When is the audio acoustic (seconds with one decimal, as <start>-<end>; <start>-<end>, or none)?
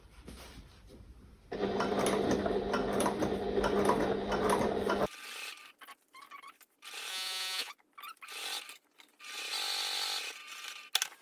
0.0-7.1; 7.7-11.2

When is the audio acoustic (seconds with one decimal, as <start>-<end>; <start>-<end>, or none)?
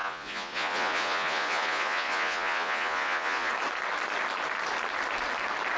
3.5-5.8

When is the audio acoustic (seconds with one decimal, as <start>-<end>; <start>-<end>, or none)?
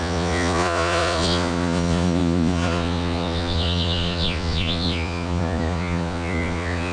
none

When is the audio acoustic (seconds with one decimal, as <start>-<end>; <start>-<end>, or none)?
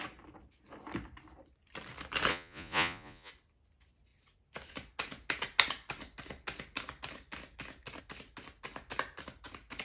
0.0-2.3; 3.3-9.8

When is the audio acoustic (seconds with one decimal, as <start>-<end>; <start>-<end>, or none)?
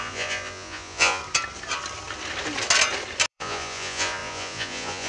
1.2-3.3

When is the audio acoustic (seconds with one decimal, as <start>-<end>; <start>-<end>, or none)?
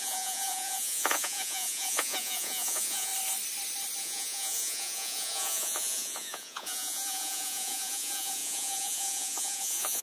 3.1-4.0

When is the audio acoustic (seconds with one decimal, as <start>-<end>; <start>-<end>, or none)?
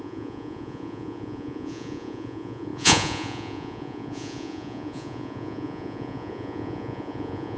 none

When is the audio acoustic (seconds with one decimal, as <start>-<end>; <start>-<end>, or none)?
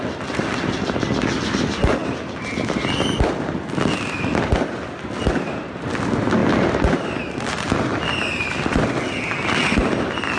0.0-10.4